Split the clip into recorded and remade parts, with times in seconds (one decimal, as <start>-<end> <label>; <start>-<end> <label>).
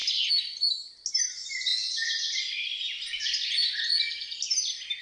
0.0-5.0 recorded